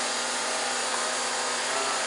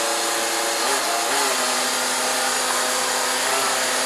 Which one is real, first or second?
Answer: second